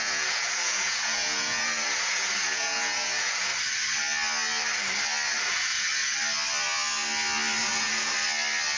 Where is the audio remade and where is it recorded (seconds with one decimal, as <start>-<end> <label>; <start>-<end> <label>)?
0.0-3.5 remade; 3.5-5.5 recorded; 5.5-5.9 remade; 5.9-7.6 recorded; 7.6-8.1 remade; 8.1-8.8 recorded

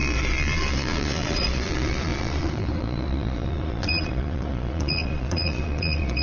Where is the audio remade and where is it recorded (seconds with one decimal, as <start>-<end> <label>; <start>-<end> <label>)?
0.0-6.2 remade

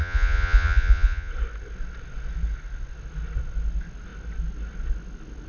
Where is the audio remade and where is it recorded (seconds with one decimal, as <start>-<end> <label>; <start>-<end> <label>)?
0.0-1.3 remade; 1.3-5.5 recorded

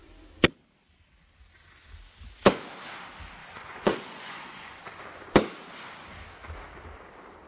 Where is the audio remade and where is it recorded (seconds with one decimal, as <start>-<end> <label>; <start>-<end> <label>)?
0.0-3.4 recorded; 3.4-4.8 remade; 4.8-7.5 recorded

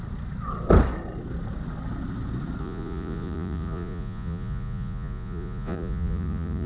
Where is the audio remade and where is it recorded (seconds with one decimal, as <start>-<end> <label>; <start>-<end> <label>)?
0.0-2.6 recorded; 2.6-6.7 remade